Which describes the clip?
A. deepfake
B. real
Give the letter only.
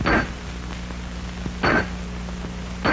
B